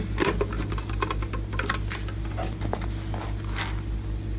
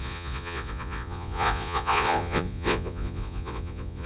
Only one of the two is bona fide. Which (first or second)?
first